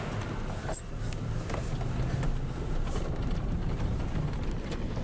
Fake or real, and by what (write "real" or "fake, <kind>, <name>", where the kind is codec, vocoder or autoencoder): real